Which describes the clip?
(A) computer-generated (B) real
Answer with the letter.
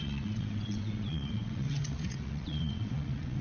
A